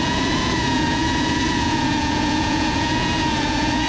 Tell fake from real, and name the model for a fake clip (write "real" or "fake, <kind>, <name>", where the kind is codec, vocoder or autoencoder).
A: fake, vocoder, Vocos